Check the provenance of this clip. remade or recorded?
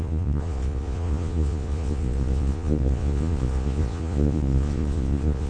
remade